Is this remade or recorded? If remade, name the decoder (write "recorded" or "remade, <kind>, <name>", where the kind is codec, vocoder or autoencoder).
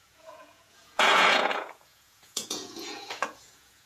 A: remade, vocoder, Vocos